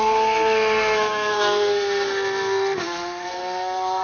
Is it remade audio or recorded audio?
remade